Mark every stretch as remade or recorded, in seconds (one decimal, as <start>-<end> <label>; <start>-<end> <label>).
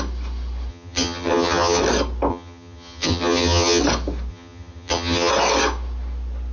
0.0-0.7 recorded; 0.7-1.8 remade; 1.8-2.3 recorded; 2.3-3.8 remade; 3.8-4.3 recorded; 4.3-5.3 remade; 5.3-6.5 recorded